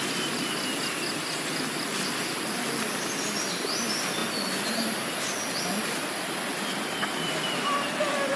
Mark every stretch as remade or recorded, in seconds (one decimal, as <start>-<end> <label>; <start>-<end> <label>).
0.0-8.4 recorded